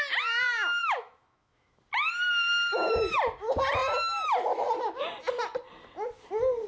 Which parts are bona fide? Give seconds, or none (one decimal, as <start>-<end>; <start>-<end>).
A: 0.0-0.8; 1.8-6.7